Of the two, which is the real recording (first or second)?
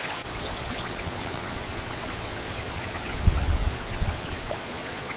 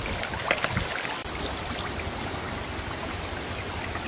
second